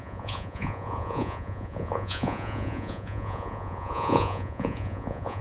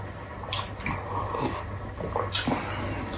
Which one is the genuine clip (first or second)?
second